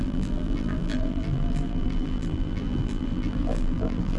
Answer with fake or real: fake